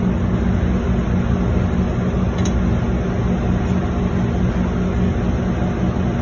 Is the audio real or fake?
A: real